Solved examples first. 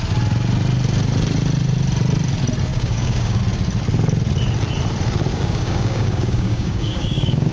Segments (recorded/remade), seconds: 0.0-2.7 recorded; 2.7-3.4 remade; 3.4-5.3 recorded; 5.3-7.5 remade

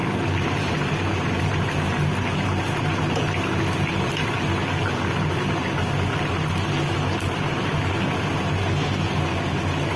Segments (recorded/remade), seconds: 0.0-10.0 recorded

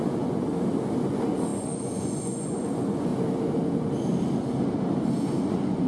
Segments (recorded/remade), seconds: 0.0-0.5 remade; 0.5-1.1 recorded; 1.1-3.1 remade; 3.1-5.2 recorded; 5.2-5.9 remade

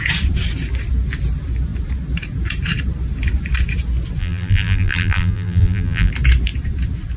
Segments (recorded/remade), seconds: 0.0-4.2 recorded; 4.2-6.1 remade; 6.1-7.2 recorded

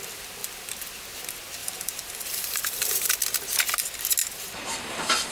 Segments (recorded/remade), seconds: 0.0-1.6 recorded; 1.6-3.1 remade; 3.1-4.2 recorded; 4.2-5.3 remade

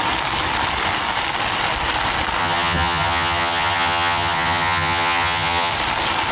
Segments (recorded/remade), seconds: 0.0-2.4 recorded; 2.4-5.7 remade; 5.7-6.3 recorded

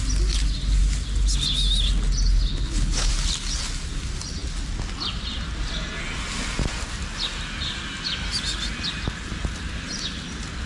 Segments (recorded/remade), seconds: 0.0-2.5 recorded; 2.5-3.1 remade; 3.1-10.7 recorded